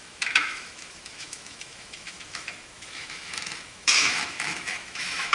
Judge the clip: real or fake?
fake